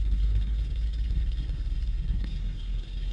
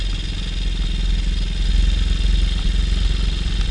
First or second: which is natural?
second